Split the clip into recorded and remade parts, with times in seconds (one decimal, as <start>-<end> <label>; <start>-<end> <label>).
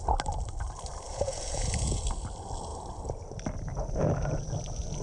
0.0-1.1 recorded; 1.1-2.0 remade; 2.0-5.0 recorded